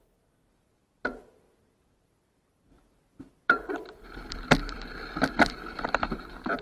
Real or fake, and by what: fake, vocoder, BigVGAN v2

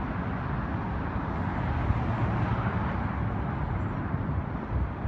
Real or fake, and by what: real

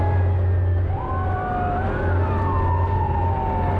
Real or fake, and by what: real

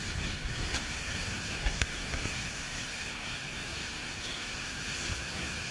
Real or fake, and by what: fake, codec, SNAC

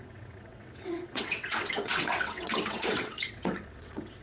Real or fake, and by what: fake, vocoder, WaveNeXt